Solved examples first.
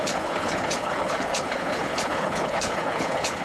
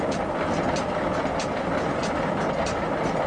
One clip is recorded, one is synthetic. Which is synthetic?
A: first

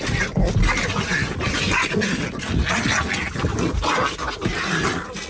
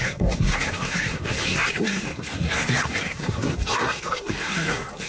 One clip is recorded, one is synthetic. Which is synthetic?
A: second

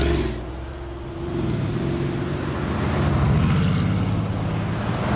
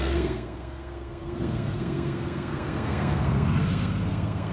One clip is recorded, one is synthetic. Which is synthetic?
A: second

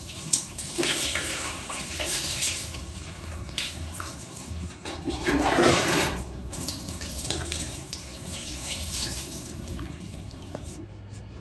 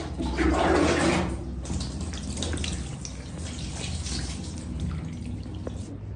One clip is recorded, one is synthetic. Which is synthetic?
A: first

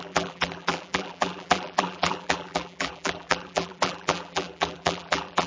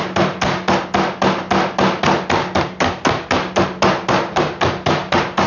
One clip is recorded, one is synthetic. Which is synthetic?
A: first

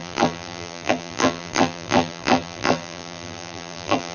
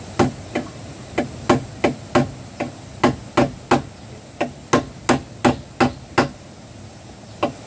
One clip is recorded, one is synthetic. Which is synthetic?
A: first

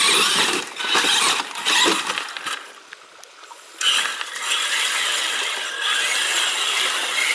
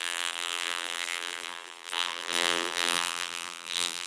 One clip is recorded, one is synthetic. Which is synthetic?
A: second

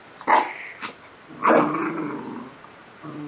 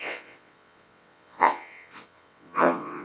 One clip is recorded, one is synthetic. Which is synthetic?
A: second